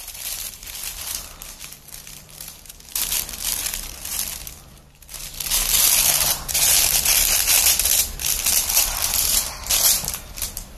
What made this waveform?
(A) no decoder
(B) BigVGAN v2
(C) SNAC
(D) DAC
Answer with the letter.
B